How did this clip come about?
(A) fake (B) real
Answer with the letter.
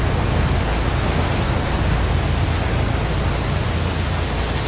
B